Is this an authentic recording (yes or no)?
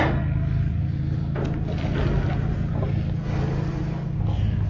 yes